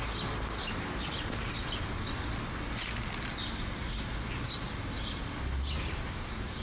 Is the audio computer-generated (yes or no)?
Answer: no